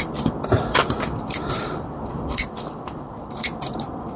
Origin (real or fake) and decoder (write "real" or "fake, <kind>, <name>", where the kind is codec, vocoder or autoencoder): fake, vocoder, BigVGAN v2